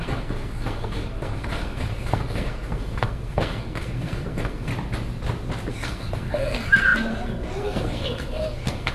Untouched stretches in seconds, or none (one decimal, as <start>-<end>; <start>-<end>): 4.7-5.7